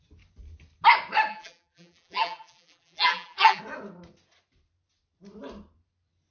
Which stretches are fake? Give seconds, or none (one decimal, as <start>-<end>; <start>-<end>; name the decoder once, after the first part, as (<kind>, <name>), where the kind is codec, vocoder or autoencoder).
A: 1.3-3.6 (vocoder, BigVGAN v2)